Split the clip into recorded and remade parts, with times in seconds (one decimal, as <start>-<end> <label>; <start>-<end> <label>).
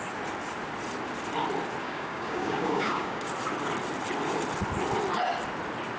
0.0-1.8 recorded; 1.8-3.3 remade; 3.3-6.0 recorded